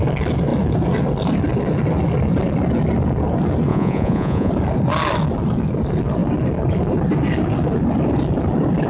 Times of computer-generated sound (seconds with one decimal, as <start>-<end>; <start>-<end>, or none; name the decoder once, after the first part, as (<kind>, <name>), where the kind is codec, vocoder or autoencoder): 3.7-4.5 (vocoder, Vocos)